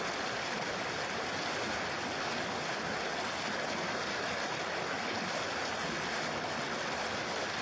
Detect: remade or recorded recorded